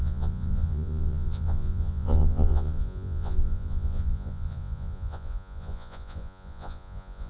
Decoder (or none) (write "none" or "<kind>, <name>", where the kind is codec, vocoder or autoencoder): vocoder, Vocos